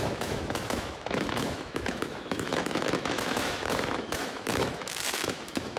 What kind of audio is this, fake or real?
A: fake